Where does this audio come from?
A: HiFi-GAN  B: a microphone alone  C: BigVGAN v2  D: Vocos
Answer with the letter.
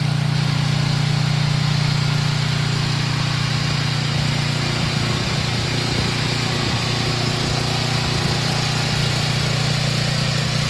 B